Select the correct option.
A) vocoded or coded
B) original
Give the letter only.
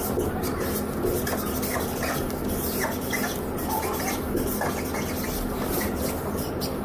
B